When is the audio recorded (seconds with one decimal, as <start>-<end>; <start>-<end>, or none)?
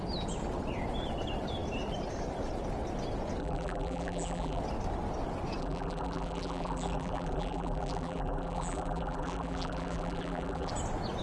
0.0-3.4; 4.6-5.6; 10.7-11.2